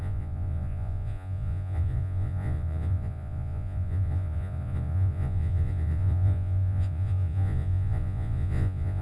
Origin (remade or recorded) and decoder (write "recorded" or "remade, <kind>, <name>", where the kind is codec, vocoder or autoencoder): remade, vocoder, Vocos